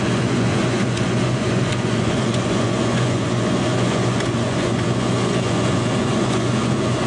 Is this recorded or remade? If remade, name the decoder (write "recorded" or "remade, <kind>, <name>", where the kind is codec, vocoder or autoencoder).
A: remade, vocoder, Vocos